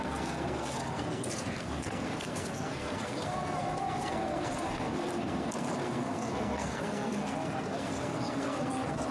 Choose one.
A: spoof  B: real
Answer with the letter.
A